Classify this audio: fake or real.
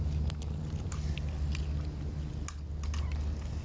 real